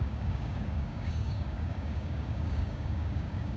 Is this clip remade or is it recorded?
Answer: remade